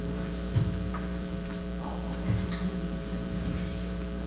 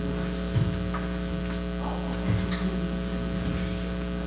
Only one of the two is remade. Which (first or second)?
first